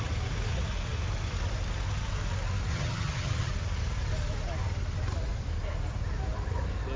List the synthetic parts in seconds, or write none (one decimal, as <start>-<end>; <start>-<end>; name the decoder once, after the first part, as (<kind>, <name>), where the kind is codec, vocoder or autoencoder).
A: 2.7-3.5 (vocoder, HiFi-GAN)